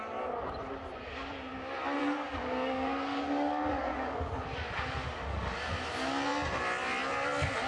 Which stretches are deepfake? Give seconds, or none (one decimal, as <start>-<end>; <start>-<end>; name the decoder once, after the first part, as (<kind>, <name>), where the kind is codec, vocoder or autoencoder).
2.0-4.3 (codec, DAC); 5.0-5.7